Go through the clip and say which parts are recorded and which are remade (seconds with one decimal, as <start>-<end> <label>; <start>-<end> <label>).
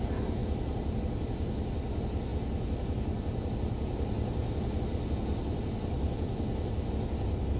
0.0-7.6 recorded